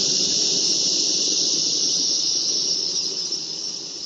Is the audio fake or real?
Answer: fake